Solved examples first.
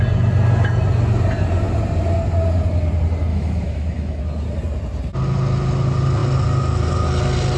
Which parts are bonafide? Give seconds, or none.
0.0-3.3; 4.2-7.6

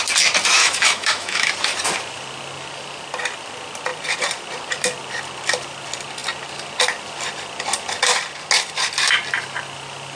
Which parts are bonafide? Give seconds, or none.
0.0-0.6; 1.5-10.2